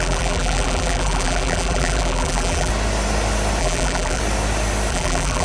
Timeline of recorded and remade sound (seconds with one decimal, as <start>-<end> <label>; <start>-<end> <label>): 0.0-2.7 remade; 2.7-3.6 recorded; 3.6-4.2 remade; 4.2-4.9 recorded; 4.9-5.4 remade